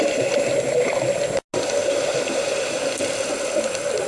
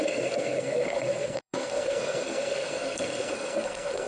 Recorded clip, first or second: first